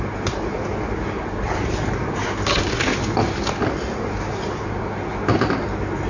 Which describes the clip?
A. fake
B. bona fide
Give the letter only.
B